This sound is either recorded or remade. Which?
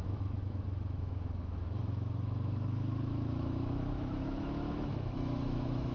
remade